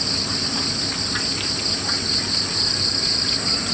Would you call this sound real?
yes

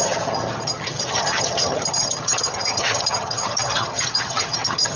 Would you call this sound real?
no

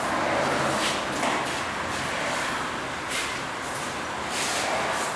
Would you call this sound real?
yes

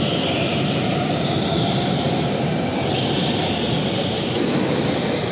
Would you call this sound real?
yes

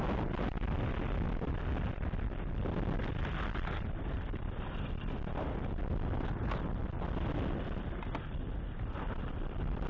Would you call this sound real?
yes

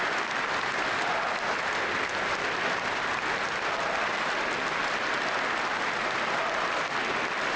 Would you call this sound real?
yes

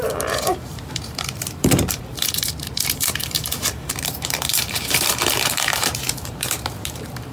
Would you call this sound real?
no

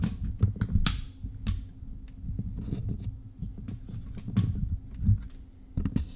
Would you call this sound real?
yes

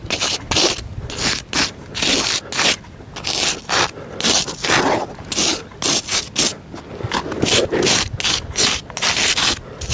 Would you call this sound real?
yes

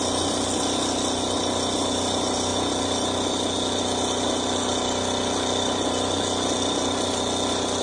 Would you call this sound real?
yes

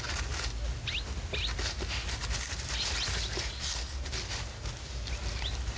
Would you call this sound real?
yes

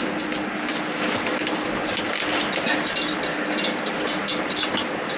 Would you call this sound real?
yes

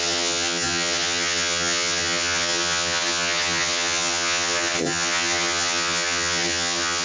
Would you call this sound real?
no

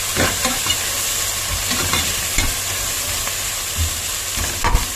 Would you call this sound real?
no